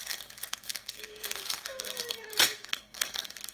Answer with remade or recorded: remade